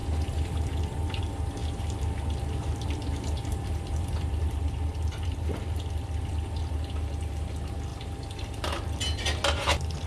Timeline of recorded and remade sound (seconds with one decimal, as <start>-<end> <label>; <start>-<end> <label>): 0.0-1.2 remade; 1.2-1.6 recorded; 1.6-6.7 remade; 6.7-7.9 recorded; 7.9-8.5 remade; 8.5-10.1 recorded